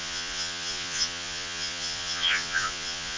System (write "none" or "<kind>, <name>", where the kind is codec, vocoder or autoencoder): vocoder, Vocos